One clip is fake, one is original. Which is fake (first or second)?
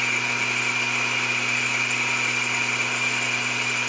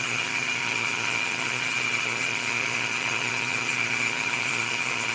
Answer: second